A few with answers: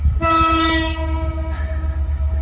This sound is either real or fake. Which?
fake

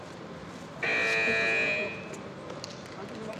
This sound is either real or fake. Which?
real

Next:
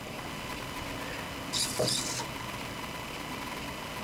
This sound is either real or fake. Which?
real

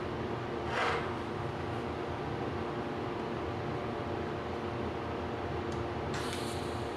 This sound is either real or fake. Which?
real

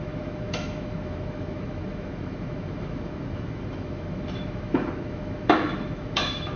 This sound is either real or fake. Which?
fake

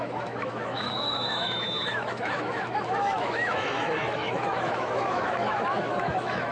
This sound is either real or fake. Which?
fake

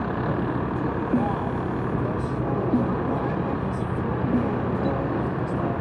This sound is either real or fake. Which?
real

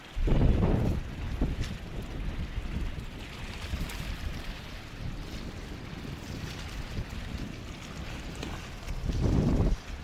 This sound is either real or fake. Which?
real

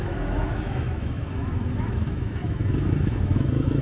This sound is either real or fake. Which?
fake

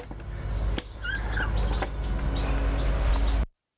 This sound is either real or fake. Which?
real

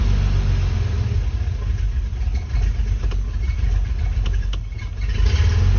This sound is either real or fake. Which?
real